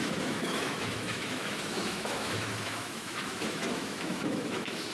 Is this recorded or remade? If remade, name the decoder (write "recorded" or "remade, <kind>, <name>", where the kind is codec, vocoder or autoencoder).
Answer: remade, autoencoder, DAC-VAE